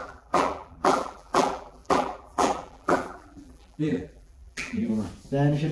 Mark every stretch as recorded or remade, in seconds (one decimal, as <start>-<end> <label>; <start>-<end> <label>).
0.0-4.9 remade; 4.9-5.7 recorded